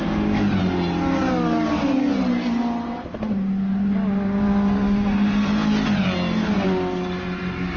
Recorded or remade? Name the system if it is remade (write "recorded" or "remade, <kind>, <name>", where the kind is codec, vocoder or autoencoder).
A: recorded